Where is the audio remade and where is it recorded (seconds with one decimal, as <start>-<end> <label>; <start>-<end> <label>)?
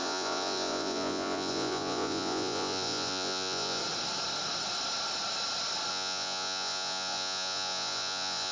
0.0-3.8 remade; 3.8-5.9 recorded; 5.9-8.5 remade